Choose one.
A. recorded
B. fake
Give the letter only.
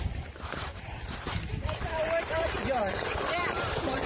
B